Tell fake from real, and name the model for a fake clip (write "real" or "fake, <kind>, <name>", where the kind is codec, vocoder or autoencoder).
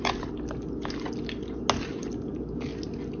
real